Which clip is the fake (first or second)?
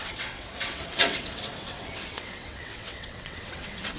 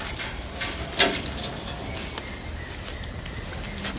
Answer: first